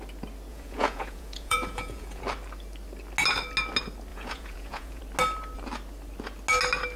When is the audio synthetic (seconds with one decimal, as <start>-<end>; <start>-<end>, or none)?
0.5-2.2; 4.1-5.0